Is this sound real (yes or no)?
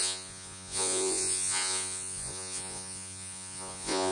no